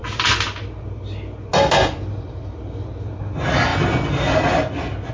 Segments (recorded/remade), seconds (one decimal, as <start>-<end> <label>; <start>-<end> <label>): 0.0-5.1 recorded